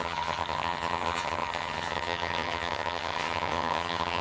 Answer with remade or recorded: remade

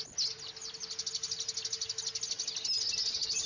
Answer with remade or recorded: recorded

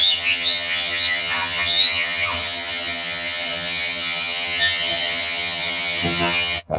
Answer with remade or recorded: remade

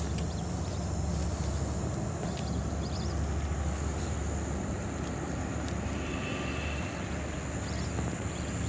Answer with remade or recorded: recorded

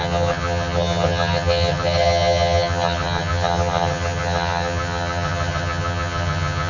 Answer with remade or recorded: remade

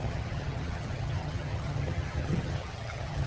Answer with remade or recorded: remade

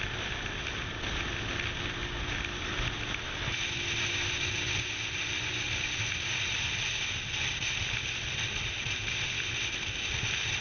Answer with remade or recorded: recorded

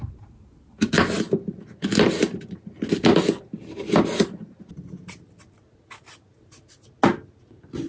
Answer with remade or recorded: recorded